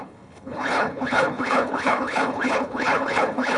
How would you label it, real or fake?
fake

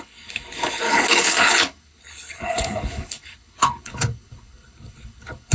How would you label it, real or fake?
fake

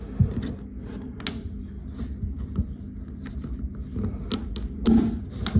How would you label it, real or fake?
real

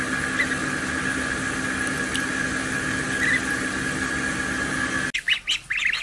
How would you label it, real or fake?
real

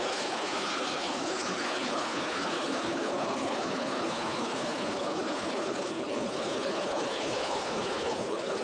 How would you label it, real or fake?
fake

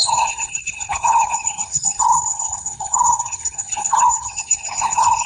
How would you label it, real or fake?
fake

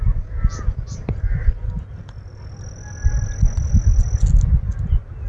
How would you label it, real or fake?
real